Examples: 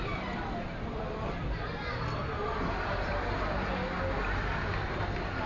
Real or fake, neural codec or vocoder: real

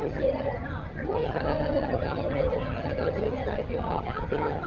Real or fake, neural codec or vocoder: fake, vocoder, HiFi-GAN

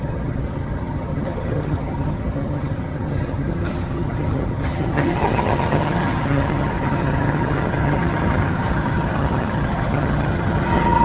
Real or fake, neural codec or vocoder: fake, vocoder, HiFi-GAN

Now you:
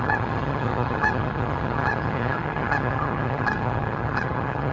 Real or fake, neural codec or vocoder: fake, vocoder, HiFi-GAN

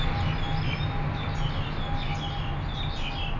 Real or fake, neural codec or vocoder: real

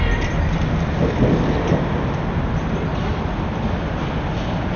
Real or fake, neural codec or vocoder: real